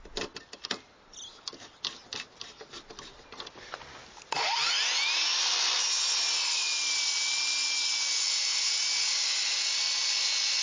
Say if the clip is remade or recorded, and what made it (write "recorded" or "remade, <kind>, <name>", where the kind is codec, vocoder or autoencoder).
recorded